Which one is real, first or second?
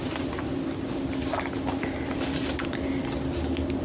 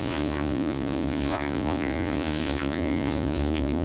first